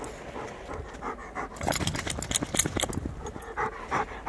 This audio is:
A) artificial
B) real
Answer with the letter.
B